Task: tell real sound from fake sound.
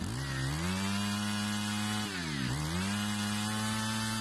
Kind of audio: real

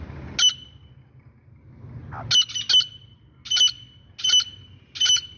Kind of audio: real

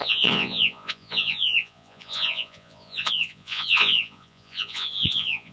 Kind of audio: fake